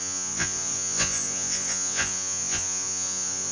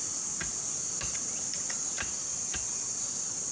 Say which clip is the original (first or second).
second